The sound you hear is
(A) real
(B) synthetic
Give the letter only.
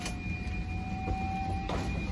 A